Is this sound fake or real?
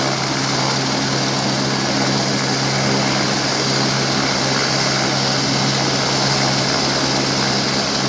real